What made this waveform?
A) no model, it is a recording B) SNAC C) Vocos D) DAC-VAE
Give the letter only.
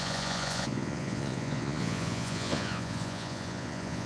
C